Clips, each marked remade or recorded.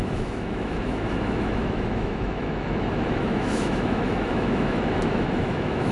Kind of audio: remade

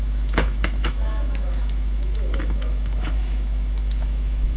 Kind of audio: remade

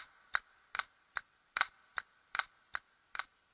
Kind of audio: recorded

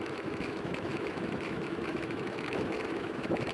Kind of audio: remade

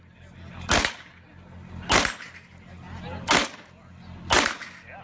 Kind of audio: recorded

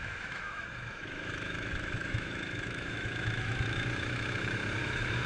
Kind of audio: remade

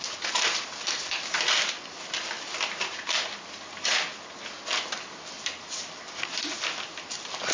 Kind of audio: recorded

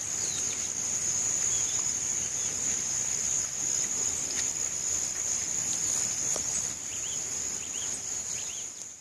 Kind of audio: recorded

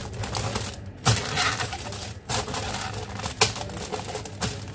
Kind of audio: recorded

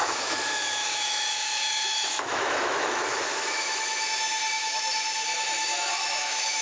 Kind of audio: remade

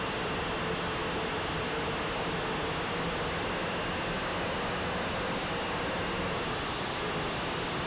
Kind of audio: recorded